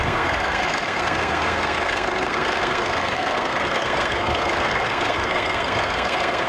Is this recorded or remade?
remade